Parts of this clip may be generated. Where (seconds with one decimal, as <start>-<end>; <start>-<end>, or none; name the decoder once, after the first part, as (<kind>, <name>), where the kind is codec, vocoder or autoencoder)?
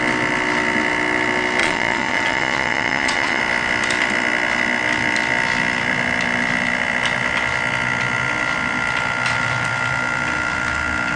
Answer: 1.6-3.4 (vocoder, Vocos)